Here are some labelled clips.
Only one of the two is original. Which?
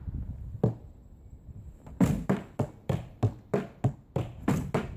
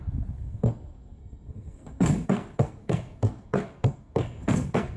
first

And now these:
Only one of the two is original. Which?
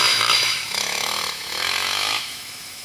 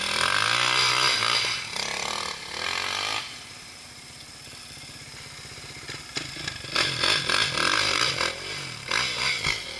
second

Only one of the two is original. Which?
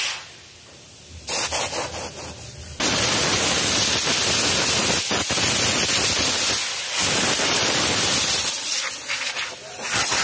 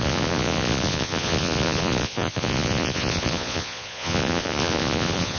first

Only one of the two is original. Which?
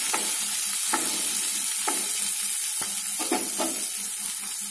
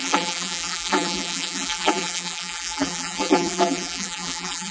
first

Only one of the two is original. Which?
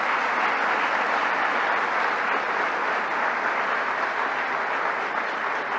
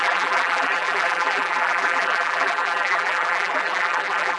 first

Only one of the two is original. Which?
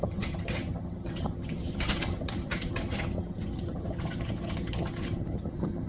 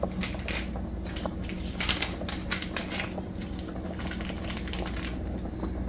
second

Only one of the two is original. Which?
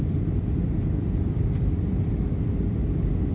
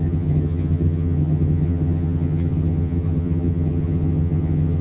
first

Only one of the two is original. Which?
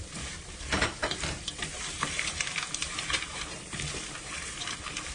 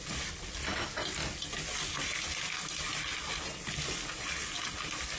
second